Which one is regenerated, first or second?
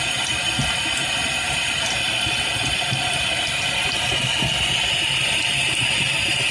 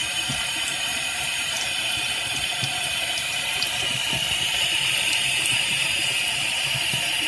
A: second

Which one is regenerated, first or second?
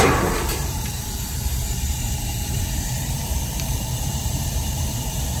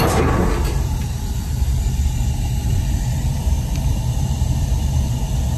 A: first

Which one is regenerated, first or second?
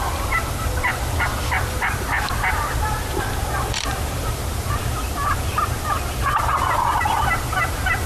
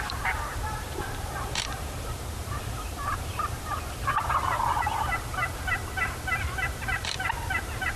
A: second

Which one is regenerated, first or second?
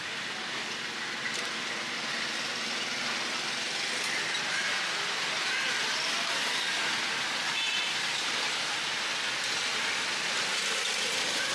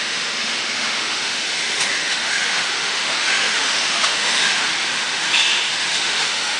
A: second